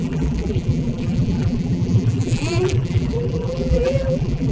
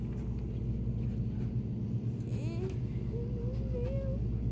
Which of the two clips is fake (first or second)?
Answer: first